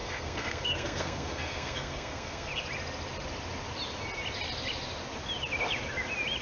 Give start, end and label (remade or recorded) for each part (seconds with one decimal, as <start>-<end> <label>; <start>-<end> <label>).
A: 0.0-2.5 remade; 2.5-6.4 recorded